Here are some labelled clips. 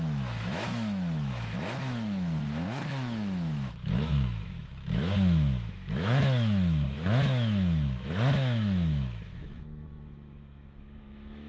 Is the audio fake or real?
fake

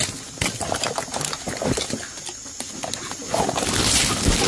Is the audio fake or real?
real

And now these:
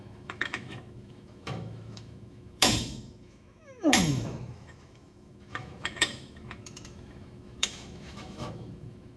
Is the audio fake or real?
fake